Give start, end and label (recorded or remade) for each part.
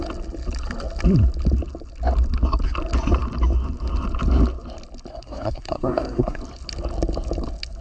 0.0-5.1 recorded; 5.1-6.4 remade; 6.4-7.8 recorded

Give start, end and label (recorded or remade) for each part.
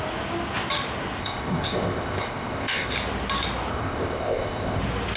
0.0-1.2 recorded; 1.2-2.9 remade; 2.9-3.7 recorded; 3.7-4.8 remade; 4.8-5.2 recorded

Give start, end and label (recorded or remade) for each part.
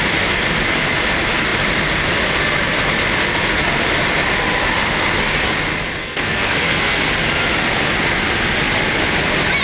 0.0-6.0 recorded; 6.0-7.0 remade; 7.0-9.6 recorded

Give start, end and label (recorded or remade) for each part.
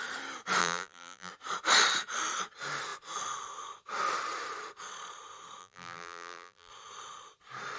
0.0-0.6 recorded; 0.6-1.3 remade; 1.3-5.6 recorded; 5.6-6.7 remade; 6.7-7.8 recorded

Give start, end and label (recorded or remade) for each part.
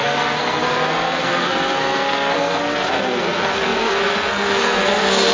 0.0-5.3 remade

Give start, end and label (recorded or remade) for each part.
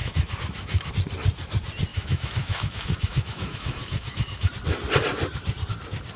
0.0-0.9 remade; 0.9-1.9 recorded; 1.9-4.5 remade; 4.5-6.2 recorded